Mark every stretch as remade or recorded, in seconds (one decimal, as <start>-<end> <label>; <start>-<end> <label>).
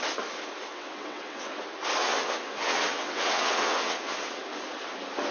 0.0-0.7 recorded; 0.7-1.5 remade; 1.5-2.0 recorded; 2.0-4.4 remade; 4.4-5.3 recorded